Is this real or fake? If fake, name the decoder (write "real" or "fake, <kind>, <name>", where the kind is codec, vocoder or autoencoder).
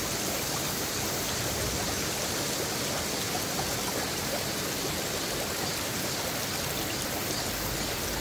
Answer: real